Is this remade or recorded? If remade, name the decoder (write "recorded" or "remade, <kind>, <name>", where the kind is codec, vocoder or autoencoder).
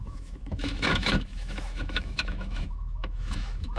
remade, autoencoder, DAC-VAE